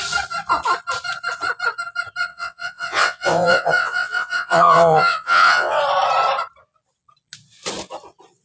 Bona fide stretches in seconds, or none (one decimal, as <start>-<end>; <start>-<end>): 0.0-2.3; 5.8-8.4